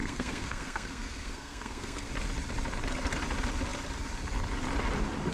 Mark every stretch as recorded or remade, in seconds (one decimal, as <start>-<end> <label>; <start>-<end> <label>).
0.0-2.1 remade; 2.1-5.3 recorded